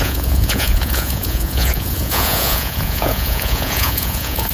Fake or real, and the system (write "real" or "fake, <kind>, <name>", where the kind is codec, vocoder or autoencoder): fake, vocoder, Vocos